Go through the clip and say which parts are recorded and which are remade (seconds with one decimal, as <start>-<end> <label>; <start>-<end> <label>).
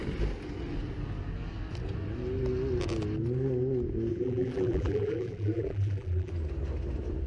0.0-4.1 recorded; 4.1-6.3 remade; 6.3-7.3 recorded